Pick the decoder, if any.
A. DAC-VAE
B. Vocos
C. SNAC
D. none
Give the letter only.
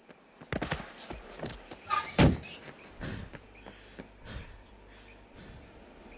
D